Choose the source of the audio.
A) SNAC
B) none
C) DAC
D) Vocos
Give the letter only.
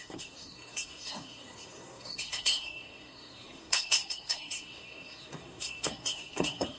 A